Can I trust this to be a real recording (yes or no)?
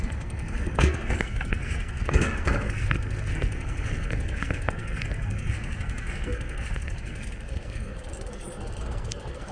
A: no